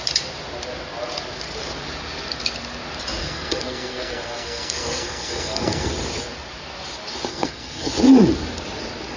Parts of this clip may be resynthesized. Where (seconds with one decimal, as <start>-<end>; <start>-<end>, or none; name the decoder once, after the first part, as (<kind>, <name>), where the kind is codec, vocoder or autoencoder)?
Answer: 3.2-5.9 (codec, SNAC); 7.3-7.9